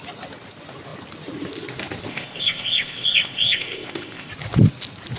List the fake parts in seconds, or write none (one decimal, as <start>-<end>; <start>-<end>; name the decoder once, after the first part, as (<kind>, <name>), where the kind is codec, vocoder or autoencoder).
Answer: 2.1-4.3 (codec, ZipCodec)